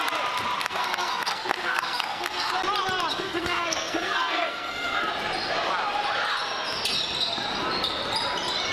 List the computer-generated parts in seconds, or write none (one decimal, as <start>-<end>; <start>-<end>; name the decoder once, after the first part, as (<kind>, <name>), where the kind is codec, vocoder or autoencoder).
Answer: 0.6-2.5 (codec, SNAC); 3.1-5.1